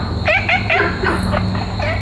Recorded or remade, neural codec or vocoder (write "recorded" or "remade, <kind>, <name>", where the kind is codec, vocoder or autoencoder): recorded